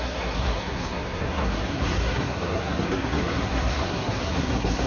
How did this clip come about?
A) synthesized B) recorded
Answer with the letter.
A